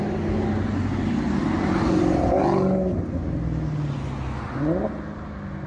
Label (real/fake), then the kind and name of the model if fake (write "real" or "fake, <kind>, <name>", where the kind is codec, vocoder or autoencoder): real